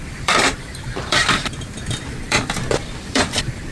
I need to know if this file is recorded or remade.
remade